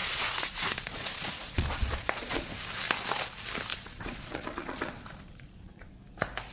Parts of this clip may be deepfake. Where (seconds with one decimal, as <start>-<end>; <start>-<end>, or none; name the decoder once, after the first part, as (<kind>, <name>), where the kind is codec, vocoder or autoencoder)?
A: 0.0-2.5 (vocoder, Vocos); 3.7-5.9